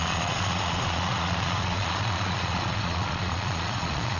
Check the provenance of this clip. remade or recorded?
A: remade